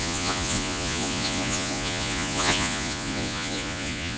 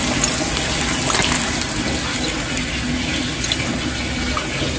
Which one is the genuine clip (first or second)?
second